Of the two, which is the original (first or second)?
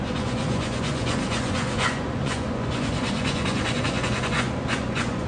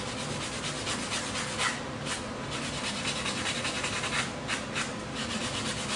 second